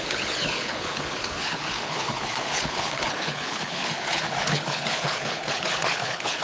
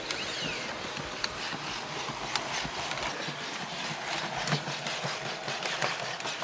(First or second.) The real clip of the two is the second